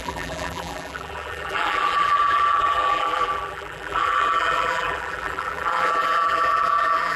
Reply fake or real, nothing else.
fake